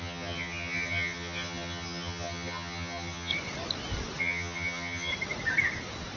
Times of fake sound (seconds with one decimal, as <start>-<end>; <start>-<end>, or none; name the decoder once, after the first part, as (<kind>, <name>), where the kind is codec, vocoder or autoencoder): 0.0-3.3 (vocoder, HiFi-GAN); 4.2-5.1